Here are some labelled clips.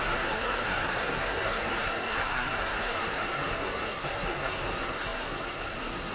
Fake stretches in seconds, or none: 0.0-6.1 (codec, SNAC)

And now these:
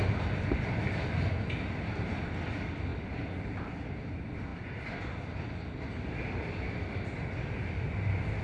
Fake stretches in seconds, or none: none

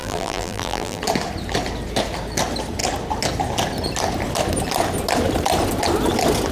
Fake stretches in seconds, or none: 0.0-1.0 (vocoder, BigVGAN v2)

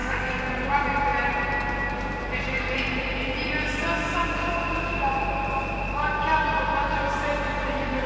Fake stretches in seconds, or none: 0.0-0.5 (codec, SNAC)